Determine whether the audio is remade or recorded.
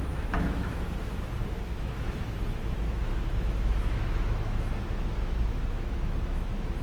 remade